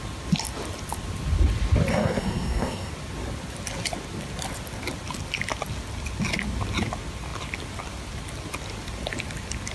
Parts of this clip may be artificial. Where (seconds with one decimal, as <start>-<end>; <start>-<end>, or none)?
1.9-2.9